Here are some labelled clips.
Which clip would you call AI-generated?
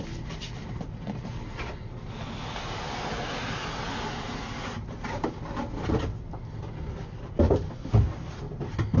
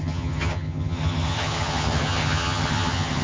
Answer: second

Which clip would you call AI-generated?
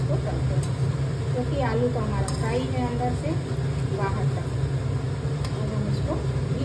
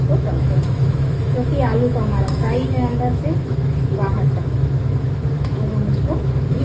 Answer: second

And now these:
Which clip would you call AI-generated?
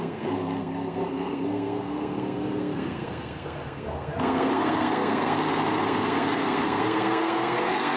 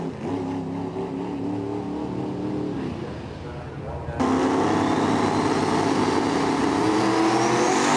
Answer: first